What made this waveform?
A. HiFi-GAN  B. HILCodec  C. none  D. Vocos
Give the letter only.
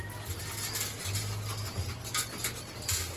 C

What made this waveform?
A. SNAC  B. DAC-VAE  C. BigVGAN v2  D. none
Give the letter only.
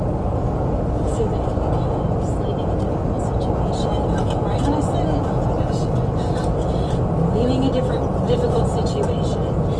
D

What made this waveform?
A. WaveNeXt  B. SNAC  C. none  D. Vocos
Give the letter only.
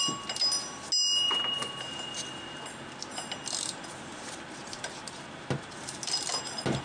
C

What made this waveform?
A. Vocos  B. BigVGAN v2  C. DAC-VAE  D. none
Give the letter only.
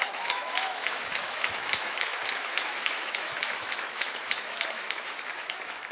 C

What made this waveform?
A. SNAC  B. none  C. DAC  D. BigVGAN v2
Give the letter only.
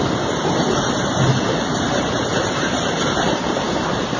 D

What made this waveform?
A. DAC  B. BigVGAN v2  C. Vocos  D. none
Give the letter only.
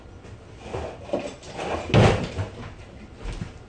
D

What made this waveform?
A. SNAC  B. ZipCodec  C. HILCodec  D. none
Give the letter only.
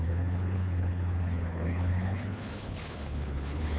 C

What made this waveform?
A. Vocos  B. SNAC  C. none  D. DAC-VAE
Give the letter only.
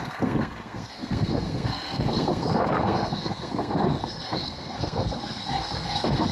B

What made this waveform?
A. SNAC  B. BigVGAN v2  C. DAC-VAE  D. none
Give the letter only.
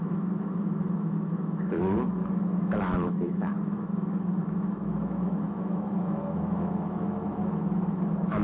C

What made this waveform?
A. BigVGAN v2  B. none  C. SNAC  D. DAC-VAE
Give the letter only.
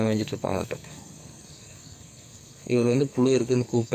C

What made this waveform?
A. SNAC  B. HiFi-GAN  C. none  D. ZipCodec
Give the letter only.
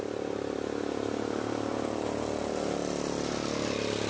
C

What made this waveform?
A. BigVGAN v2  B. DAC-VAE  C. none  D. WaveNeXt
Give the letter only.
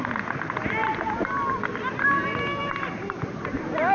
C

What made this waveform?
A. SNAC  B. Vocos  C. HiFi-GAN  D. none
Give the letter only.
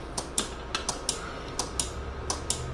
D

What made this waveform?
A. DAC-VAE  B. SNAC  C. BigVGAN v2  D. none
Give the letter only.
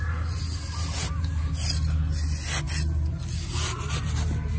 D